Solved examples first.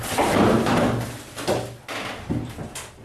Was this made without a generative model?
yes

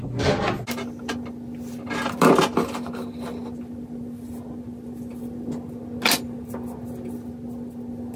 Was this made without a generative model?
yes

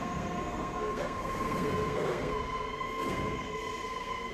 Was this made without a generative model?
no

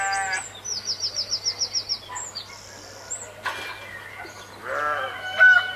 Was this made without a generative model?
yes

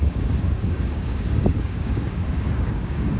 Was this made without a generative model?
no